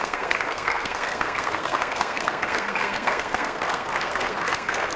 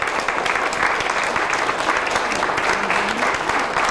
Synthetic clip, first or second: first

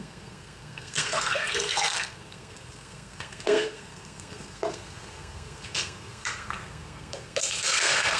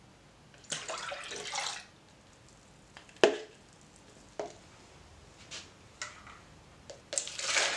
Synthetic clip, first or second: first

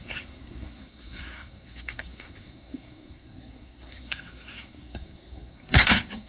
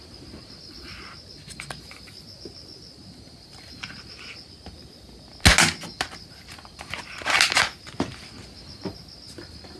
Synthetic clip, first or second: first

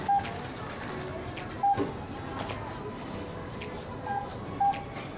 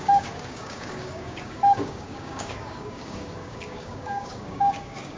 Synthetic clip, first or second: second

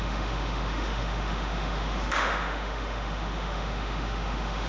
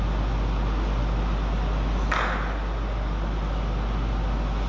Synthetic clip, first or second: first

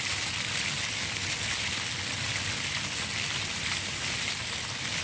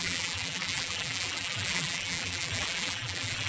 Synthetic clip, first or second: second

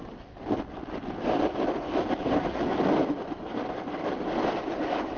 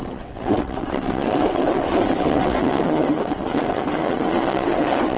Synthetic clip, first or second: second